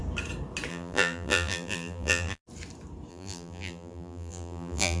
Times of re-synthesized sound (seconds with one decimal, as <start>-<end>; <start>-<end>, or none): 0.7-2.4; 3.1-5.0